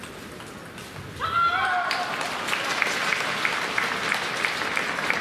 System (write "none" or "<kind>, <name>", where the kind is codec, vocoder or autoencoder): none